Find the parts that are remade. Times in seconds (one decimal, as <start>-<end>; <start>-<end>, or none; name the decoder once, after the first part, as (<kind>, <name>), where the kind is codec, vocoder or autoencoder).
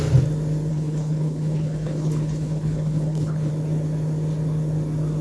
0.7-3.5 (codec, HILCodec)